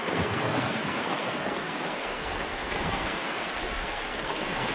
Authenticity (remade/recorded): remade